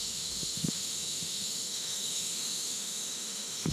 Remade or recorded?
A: remade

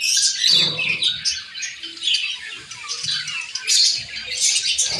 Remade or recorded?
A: recorded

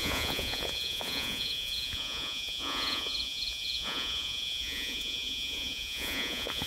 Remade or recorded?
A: remade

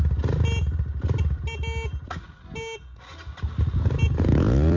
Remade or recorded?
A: recorded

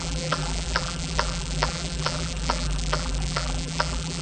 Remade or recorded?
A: remade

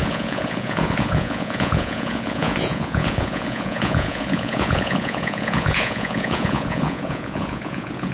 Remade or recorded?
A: remade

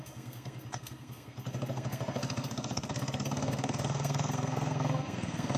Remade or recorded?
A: remade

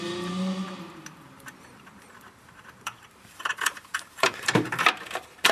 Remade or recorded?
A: remade